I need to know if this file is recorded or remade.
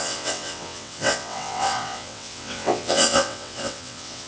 remade